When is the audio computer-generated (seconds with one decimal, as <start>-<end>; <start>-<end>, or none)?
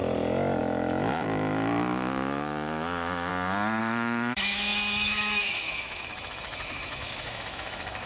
0.6-3.3; 3.8-8.1